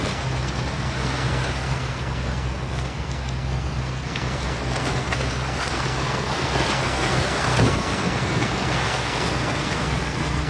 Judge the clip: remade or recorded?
remade